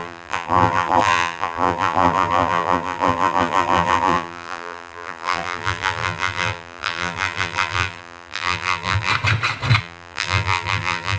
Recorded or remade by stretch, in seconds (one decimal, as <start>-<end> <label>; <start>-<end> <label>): 0.0-9.1 remade; 9.1-9.8 recorded; 9.8-11.2 remade